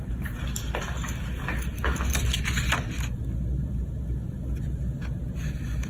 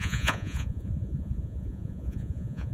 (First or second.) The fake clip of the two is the second